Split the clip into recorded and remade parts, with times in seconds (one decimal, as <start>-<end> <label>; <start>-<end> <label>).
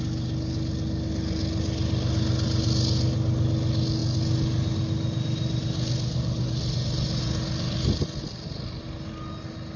0.0-9.8 recorded